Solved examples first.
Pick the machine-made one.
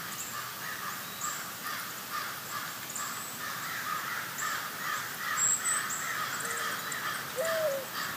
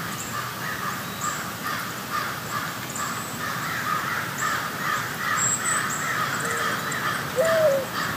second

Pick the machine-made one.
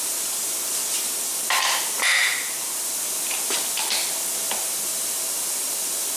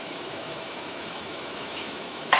second